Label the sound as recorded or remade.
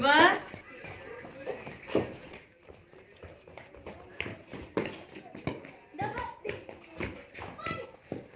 recorded